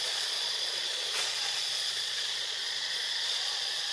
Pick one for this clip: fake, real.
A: fake